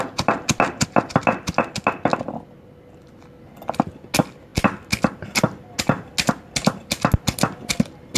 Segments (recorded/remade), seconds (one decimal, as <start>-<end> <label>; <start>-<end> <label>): 0.0-8.2 recorded